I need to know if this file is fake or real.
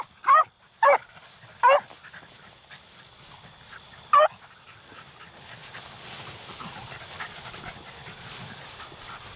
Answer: real